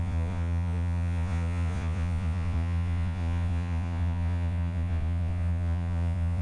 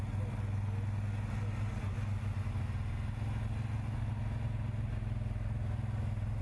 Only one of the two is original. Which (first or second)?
second